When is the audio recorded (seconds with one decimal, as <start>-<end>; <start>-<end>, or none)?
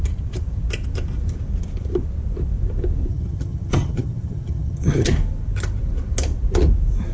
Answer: 0.0-3.1; 5.1-7.1